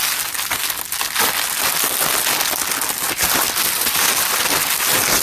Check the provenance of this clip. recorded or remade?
recorded